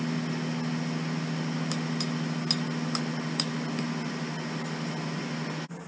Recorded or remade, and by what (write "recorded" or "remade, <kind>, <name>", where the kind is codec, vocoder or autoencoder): recorded